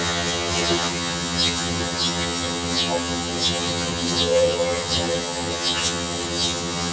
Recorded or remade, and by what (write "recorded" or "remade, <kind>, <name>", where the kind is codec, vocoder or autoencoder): remade, vocoder, HiFi-GAN